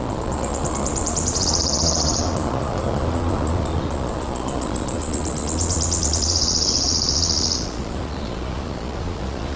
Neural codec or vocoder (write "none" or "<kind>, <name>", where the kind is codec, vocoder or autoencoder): vocoder, Vocos